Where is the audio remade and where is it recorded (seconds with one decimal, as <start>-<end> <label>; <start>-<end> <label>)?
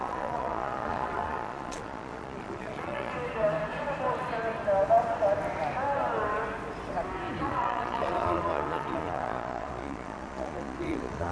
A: 0.0-3.1 remade; 3.1-7.4 recorded; 7.4-11.3 remade